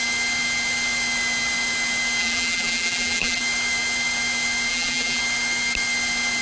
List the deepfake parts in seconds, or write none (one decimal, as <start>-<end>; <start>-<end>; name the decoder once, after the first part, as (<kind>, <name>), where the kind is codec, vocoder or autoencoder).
2.2-3.4 (vocoder, BigVGAN v2); 4.7-5.2